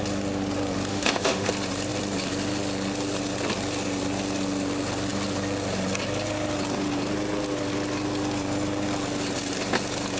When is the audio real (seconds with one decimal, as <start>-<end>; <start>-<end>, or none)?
0.0-0.9; 1.5-10.2